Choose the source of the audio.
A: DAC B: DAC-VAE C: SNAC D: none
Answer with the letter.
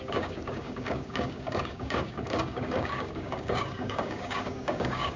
A